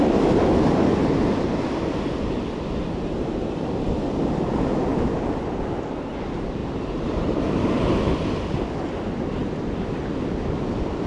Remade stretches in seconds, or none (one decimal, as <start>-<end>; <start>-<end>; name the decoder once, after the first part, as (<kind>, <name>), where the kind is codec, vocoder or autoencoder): 2.8-3.9 (vocoder, BigVGAN v2); 4.9-5.6; 6.6-7.6